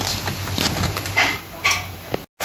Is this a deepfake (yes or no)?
no